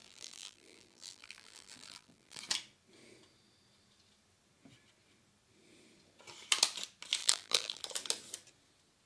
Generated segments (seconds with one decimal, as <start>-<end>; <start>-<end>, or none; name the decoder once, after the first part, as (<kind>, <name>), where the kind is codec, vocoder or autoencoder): 0.0-2.4 (vocoder, BigVGAN v2); 7.2-7.8